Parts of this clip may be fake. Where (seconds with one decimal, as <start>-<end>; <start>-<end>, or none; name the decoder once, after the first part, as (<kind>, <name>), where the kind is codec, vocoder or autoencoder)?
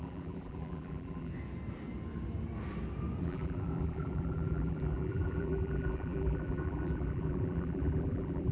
0.0-1.3 (vocoder, BigVGAN v2); 3.2-8.5